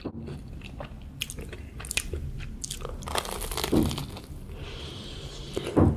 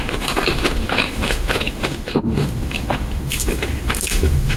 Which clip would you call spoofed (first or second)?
second